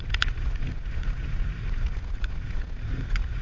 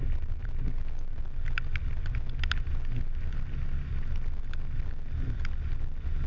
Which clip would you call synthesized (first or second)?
first